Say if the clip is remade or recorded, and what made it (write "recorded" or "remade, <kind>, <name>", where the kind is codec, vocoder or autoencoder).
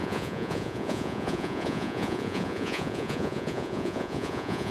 remade, vocoder, Vocos